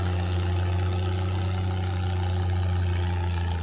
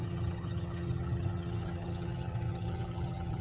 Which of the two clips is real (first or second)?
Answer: first